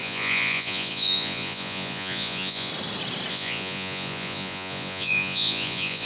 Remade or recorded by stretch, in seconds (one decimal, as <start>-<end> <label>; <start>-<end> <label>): 0.0-2.7 remade; 2.7-3.3 recorded; 3.3-6.1 remade